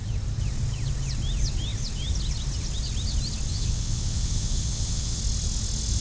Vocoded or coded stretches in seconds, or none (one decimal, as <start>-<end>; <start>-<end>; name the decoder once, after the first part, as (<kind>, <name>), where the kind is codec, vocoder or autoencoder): 3.5-5.2 (vocoder, WaveNeXt)